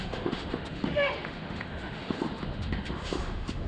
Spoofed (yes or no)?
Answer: yes